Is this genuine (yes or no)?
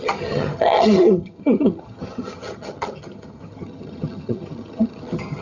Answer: no